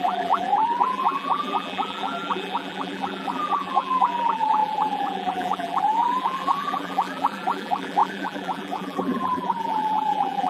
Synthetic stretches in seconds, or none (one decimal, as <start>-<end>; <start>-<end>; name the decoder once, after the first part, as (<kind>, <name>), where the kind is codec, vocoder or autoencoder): 0.0-10.5 (vocoder, BigVGAN v2)